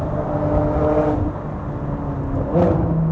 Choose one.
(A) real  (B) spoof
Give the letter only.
A